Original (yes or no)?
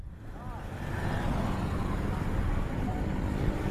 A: yes